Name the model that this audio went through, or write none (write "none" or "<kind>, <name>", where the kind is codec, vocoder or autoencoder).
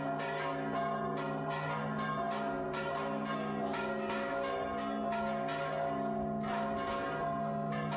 none